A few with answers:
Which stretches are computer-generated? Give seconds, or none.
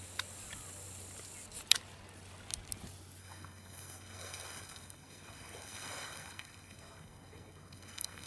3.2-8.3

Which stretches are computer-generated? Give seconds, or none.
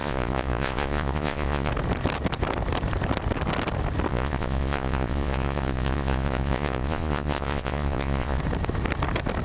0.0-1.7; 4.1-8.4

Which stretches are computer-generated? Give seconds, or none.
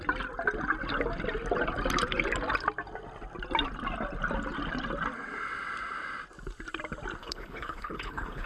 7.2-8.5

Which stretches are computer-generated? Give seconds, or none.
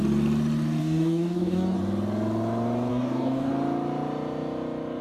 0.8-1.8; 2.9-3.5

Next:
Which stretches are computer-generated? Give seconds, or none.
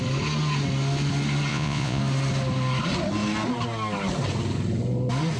1.5-2.0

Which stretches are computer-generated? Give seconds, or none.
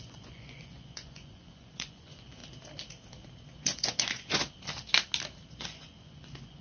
0.0-2.4; 3.4-4.4; 5.5-6.6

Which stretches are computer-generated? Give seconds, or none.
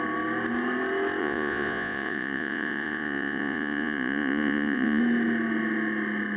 1.2-5.0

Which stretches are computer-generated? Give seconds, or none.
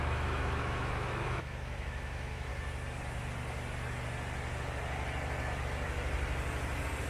0.0-2.5